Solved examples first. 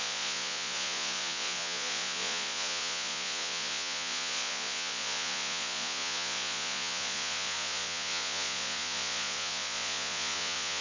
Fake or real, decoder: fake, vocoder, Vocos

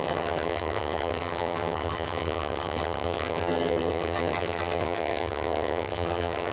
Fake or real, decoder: fake, vocoder, HiFi-GAN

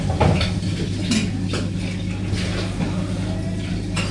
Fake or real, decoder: real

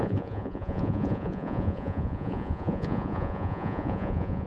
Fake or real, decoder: fake, vocoder, Vocos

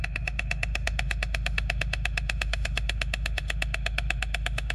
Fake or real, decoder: fake, autoencoder, DAC-VAE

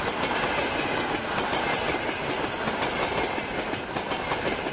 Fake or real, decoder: real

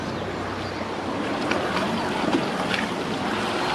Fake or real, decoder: real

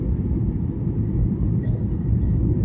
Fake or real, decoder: real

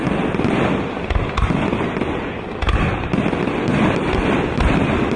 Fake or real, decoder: real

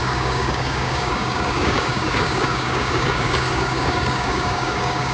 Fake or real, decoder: fake, codec, DAC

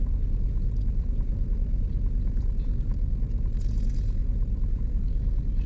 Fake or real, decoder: real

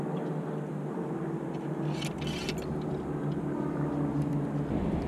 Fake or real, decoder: real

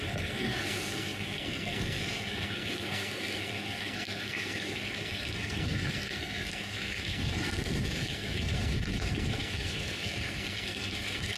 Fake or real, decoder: fake, codec, SNAC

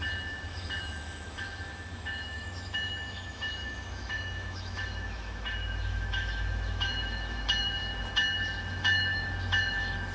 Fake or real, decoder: fake, autoencoder, DAC-VAE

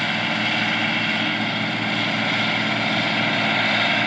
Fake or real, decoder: real